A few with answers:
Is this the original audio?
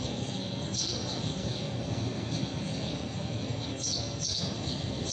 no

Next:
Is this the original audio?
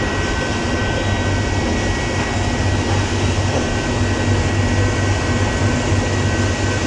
yes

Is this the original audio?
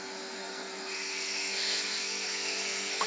no